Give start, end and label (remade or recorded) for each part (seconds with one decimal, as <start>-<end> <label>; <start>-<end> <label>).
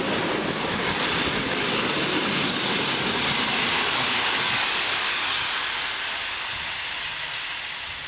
0.0-1.4 recorded; 1.4-2.0 remade; 2.0-3.7 recorded; 3.7-5.4 remade; 5.4-8.1 recorded